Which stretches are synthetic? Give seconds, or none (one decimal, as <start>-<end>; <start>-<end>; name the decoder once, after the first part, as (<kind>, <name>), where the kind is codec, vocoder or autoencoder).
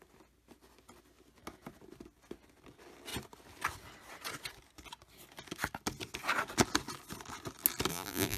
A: 7.9-8.4 (vocoder, BigVGAN v2)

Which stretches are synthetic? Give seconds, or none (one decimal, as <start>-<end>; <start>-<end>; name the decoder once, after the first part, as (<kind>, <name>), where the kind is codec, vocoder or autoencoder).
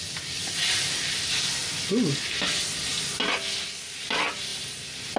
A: none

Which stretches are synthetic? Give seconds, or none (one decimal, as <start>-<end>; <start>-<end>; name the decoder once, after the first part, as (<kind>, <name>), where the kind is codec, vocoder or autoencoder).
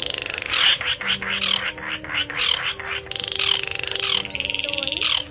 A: none